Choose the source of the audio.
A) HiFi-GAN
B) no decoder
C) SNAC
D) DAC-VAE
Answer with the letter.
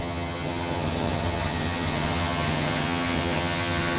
A